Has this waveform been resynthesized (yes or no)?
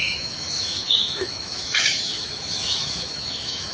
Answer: yes